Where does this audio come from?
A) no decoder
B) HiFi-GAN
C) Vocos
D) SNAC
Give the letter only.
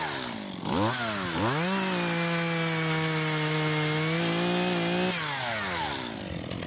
A